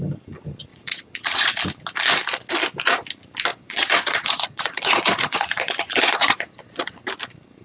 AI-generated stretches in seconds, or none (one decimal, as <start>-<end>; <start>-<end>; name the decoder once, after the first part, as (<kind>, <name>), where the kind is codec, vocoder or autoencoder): 0.7-1.5 (vocoder, Vocos); 3.5-7.0